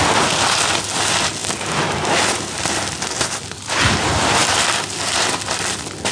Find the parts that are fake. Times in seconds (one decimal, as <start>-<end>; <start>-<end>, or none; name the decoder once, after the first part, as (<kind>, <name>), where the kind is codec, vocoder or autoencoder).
none